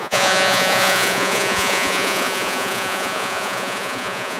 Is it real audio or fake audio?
fake